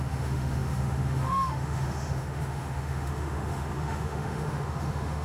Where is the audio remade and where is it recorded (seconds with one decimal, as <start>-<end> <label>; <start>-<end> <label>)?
0.0-5.2 remade